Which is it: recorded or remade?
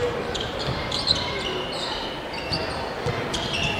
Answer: remade